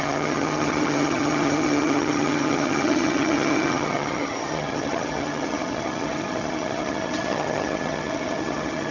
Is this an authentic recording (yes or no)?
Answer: no